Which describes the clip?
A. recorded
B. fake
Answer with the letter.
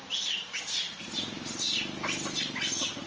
A